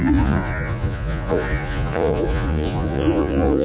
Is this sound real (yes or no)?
no